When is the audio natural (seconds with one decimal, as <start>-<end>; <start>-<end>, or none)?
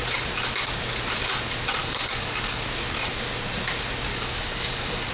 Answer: 0.0-1.8; 2.6-4.1